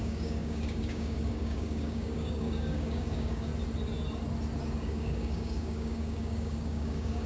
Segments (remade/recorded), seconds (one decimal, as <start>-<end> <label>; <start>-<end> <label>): 0.0-3.5 remade; 3.5-4.8 recorded; 4.8-7.3 remade